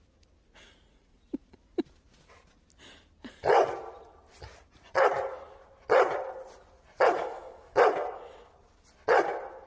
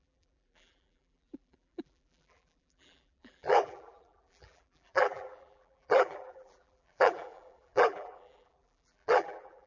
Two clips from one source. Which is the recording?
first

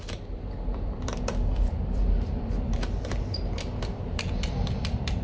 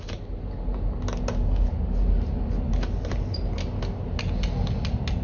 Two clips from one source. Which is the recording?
second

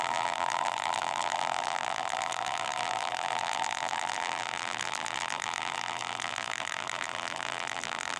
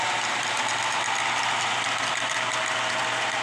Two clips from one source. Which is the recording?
second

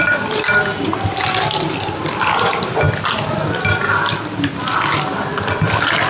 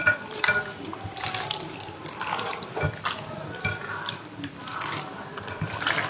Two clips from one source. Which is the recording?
first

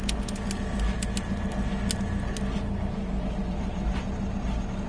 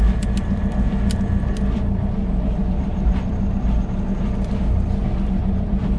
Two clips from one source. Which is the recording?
first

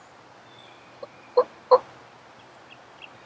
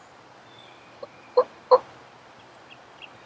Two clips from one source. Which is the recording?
first